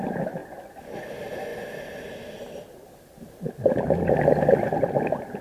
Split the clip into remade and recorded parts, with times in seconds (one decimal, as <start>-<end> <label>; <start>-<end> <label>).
0.0-5.4 recorded